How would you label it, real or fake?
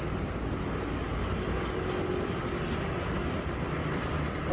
real